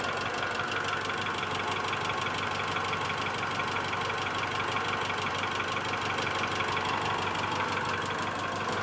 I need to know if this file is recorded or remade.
recorded